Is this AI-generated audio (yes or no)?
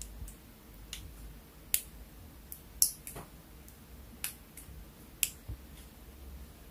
no